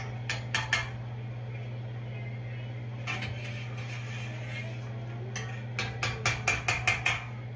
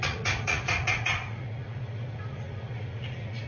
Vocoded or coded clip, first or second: second